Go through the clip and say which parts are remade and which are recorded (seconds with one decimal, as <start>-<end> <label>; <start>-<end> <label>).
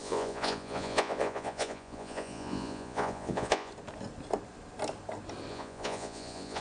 0.0-3.7 remade; 3.7-5.5 recorded; 5.5-6.6 remade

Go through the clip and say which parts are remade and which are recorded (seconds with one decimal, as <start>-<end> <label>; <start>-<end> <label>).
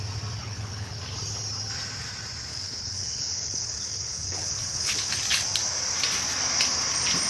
0.0-0.4 recorded; 0.4-1.0 remade; 1.0-2.5 recorded; 2.5-5.1 remade; 5.1-7.3 recorded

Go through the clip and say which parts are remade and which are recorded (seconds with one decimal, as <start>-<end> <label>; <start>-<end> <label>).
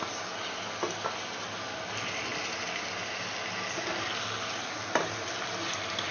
0.0-6.1 recorded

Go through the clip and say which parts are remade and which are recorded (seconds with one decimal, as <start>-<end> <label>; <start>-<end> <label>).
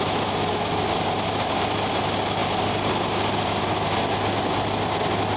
0.0-5.4 recorded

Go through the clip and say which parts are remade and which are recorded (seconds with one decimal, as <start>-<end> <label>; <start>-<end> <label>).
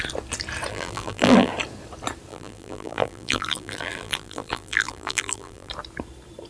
0.0-0.7 recorded; 0.7-1.5 remade; 1.5-2.3 recorded; 2.3-5.7 remade; 5.7-6.5 recorded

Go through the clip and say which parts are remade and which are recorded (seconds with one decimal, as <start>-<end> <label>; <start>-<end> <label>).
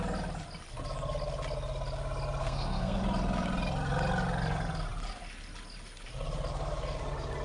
0.0-2.4 recorded; 2.4-3.0 remade; 3.0-7.4 recorded